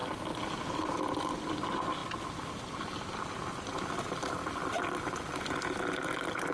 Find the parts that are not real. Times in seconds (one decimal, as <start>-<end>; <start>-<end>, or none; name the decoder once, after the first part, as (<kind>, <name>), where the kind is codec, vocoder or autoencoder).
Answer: none